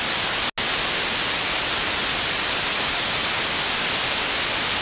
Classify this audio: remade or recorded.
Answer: recorded